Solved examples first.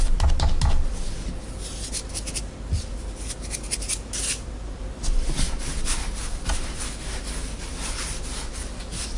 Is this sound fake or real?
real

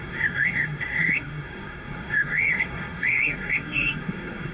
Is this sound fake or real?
fake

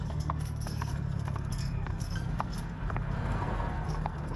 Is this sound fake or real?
fake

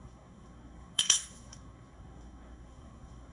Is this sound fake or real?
fake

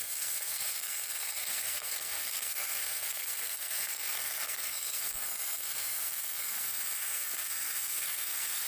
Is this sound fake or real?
fake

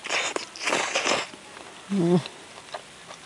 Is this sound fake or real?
real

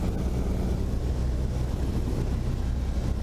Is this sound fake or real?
real